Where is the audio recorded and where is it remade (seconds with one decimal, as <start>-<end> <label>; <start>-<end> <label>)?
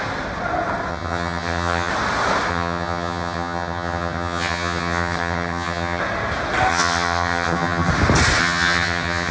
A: 0.0-0.9 recorded; 0.9-1.9 remade; 1.9-2.5 recorded; 2.5-6.0 remade; 6.0-6.7 recorded; 6.7-7.9 remade; 7.9-8.4 recorded; 8.4-9.3 remade